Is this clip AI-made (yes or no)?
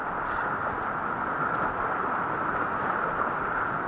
no